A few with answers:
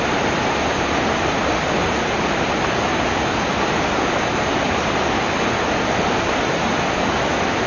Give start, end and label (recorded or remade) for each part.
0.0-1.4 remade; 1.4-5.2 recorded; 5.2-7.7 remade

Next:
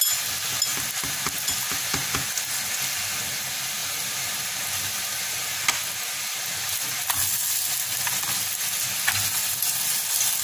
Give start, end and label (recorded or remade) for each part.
0.0-10.4 recorded

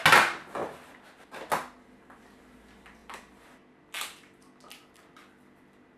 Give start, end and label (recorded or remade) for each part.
0.0-0.6 recorded; 0.6-1.3 remade; 1.3-3.0 recorded; 3.0-6.0 remade

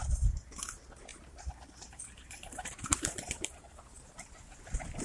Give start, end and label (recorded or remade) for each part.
0.0-1.1 recorded; 1.1-4.1 remade; 4.1-5.0 recorded

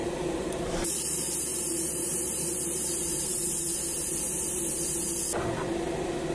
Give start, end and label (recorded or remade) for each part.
0.0-0.9 remade; 0.9-1.5 recorded; 1.5-2.4 remade; 2.4-2.9 recorded; 2.9-3.5 remade; 3.5-6.3 recorded